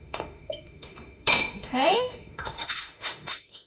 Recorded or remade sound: remade